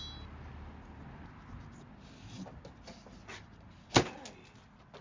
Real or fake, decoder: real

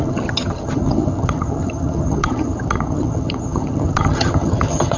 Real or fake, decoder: fake, vocoder, HiFi-GAN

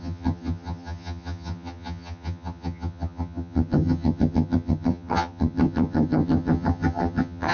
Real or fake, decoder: fake, vocoder, HiFi-GAN